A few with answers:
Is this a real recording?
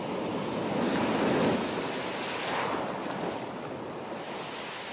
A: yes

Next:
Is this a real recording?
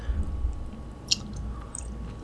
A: yes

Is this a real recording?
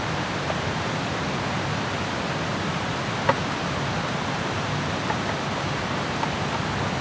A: yes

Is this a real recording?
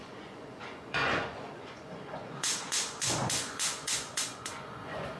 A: no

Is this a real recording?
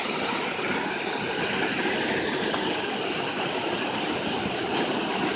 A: yes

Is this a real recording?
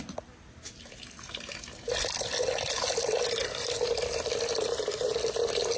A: yes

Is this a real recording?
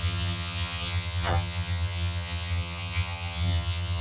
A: no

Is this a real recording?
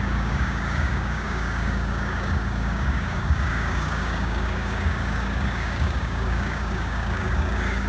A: no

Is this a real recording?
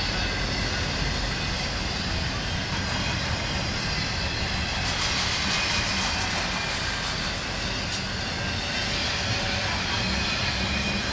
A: yes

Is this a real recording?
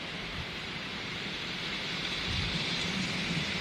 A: no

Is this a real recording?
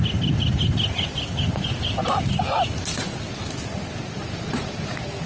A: yes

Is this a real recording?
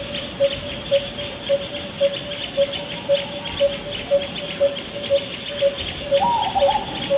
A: yes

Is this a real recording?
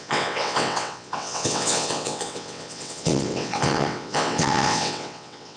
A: no